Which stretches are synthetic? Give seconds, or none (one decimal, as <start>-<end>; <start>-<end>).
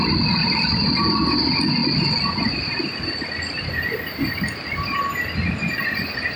0.4-0.9; 1.8-5.0